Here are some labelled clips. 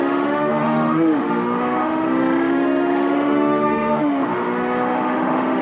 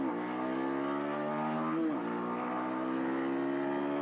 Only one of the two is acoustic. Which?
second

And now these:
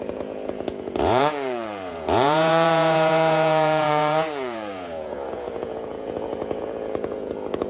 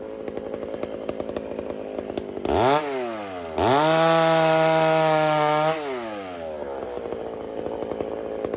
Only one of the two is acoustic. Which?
second